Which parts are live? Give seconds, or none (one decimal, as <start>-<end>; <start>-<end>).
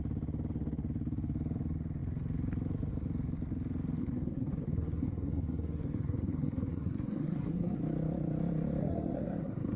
0.0-4.0; 7.8-8.8